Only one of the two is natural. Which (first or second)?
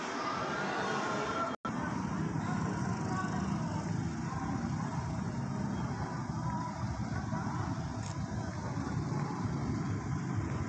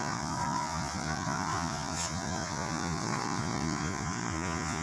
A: first